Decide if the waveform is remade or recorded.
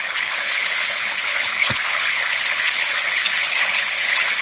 remade